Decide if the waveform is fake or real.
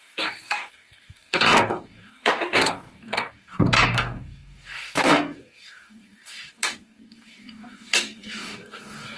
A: fake